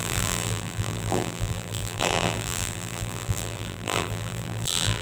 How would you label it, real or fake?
fake